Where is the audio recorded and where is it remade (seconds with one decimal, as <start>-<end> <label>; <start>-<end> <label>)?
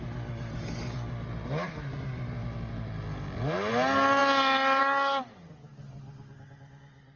0.0-7.2 recorded